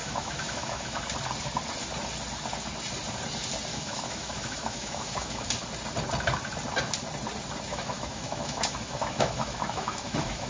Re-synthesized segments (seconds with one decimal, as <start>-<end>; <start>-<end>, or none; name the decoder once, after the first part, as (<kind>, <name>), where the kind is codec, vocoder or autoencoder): 0.0-1.0 (autoencoder, DAC-VAE); 3.7-5.5; 7.7-10.5